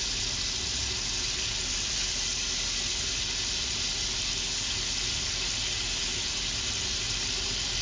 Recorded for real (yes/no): yes